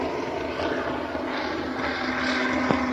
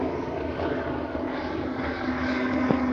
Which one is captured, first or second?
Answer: first